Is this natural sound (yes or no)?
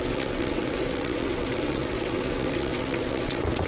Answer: no